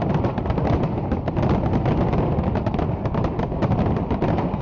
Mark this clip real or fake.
real